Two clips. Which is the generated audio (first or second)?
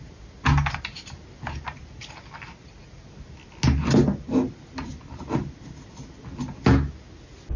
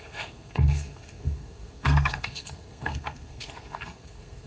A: second